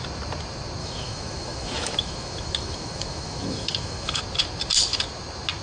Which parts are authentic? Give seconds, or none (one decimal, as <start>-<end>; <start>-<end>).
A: 0.0-0.8; 4.2-5.6